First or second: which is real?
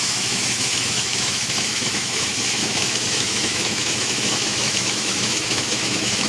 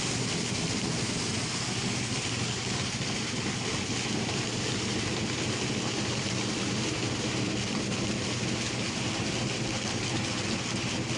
second